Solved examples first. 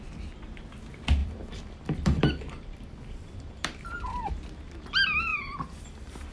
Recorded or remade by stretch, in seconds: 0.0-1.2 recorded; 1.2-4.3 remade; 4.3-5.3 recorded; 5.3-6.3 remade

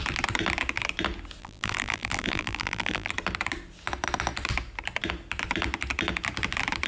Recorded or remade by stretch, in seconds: 0.0-1.4 recorded; 1.4-3.1 remade; 3.1-6.9 recorded